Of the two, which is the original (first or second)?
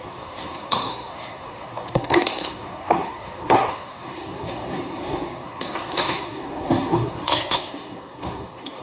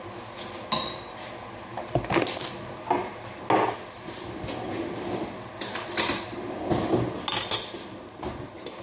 second